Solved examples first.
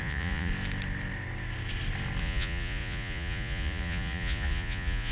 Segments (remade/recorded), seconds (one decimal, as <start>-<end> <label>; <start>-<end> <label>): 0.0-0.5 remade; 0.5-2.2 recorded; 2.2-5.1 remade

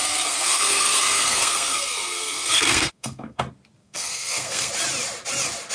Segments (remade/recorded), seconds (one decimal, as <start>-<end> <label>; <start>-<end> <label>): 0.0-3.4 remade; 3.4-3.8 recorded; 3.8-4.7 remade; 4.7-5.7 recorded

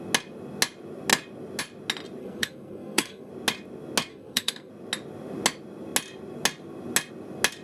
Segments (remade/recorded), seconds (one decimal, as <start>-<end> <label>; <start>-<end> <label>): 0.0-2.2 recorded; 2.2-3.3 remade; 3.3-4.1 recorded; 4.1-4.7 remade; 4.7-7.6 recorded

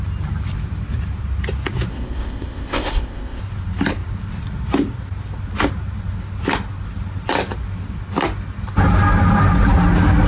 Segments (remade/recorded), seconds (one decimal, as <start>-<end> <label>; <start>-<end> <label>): 0.0-1.9 recorded; 1.9-3.4 remade; 3.4-10.3 recorded

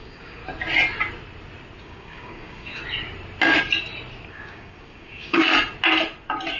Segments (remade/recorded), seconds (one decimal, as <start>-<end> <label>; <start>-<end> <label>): 0.0-0.4 remade; 0.4-1.8 recorded; 1.8-2.8 remade; 2.8-4.3 recorded; 4.3-5.5 remade; 5.5-6.6 recorded